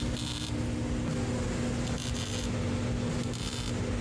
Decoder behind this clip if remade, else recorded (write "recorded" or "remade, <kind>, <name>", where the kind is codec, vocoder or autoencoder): recorded